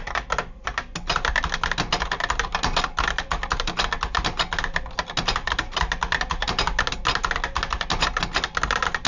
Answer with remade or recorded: recorded